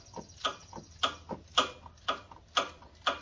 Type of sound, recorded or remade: recorded